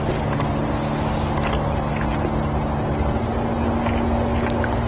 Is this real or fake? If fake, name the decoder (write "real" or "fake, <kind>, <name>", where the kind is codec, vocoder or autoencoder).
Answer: real